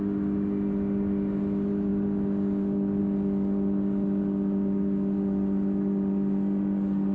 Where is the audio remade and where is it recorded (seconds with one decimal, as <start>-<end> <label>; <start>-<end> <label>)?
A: 0.0-7.1 recorded